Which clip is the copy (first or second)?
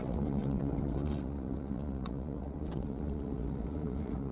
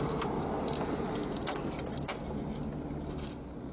first